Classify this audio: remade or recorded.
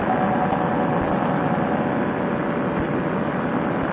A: recorded